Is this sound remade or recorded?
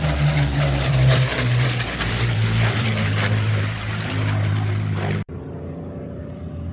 remade